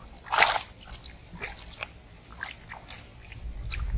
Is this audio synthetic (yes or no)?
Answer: no